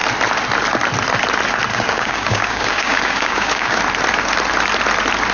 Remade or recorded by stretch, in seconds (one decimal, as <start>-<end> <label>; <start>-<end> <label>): 0.0-1.7 recorded; 1.7-3.8 remade; 3.8-5.3 recorded